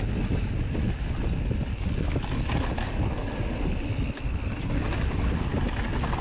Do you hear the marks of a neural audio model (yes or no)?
no